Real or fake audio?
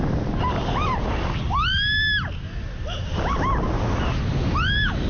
real